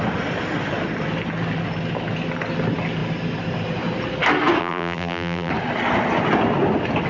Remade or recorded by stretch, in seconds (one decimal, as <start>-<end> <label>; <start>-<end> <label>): 0.0-4.6 recorded; 4.6-5.5 remade; 5.5-7.1 recorded